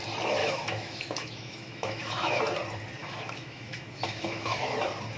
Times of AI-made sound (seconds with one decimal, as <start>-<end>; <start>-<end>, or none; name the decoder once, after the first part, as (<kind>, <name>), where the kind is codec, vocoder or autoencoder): 0.4-2.4 (autoencoder, DAC-VAE); 3.0-4.6